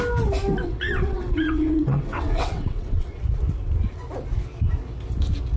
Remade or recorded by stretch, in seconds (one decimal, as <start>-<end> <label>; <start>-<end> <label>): 0.0-0.6 recorded; 0.6-3.2 remade; 3.2-5.6 recorded